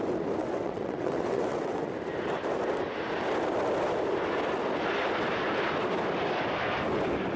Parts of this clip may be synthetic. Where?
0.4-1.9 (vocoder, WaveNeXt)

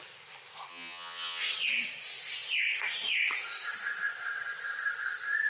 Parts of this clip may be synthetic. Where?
0.7-1.4 (vocoder, HiFi-GAN)